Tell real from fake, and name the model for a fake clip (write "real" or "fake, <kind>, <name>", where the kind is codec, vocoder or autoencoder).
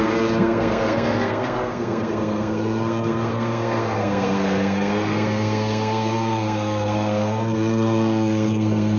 fake, codec, SNAC